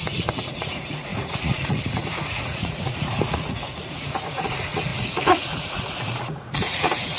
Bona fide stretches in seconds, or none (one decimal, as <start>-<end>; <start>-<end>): none